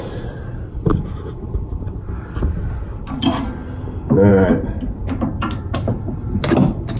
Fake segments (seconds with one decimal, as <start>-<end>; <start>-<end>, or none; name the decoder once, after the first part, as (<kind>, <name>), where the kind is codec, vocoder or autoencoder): none